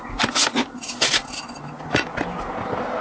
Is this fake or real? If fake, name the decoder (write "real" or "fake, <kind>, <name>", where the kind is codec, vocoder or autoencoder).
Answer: real